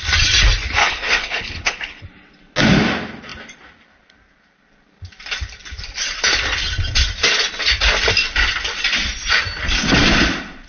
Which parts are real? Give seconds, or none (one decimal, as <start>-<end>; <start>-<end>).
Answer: 0.0-0.8; 2.0-10.7